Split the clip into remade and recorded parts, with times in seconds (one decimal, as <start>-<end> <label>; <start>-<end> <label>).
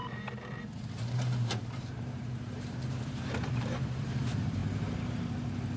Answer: 0.0-4.6 remade; 4.6-5.8 recorded